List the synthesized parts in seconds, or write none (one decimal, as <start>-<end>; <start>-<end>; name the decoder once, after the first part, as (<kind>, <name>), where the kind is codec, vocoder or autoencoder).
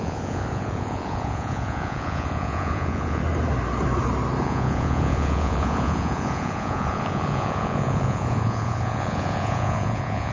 0.0-3.2 (vocoder, Vocos); 4.4-10.3